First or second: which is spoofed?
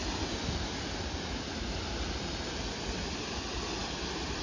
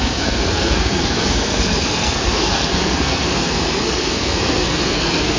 second